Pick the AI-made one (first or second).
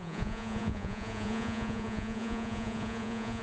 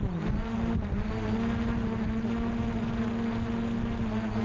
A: first